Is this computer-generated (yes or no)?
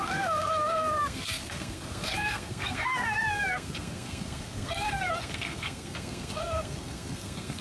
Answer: yes